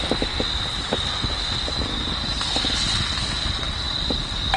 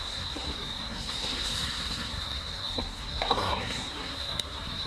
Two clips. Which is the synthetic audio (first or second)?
second